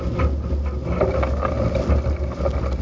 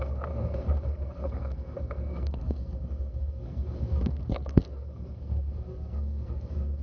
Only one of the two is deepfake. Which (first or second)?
second